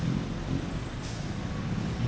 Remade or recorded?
recorded